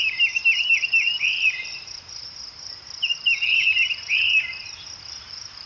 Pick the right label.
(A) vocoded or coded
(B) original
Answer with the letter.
A